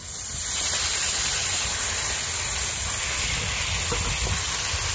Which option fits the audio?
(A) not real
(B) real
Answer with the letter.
B